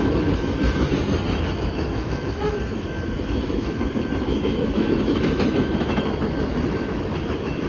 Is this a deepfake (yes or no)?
yes